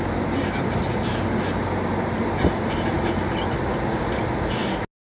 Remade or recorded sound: recorded